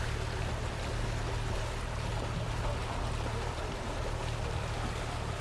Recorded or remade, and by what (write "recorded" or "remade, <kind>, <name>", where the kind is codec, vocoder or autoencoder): recorded